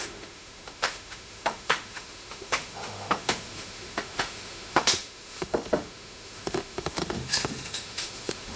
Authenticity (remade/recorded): remade